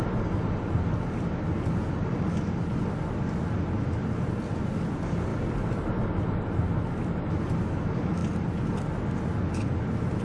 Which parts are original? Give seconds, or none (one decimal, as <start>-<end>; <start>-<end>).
0.0-10.2